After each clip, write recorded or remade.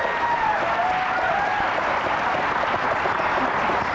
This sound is recorded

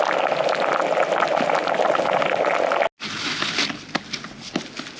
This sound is recorded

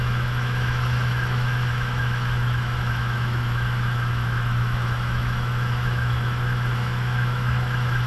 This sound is remade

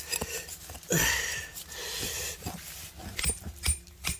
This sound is recorded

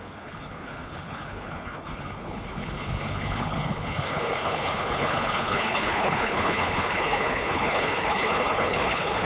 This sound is remade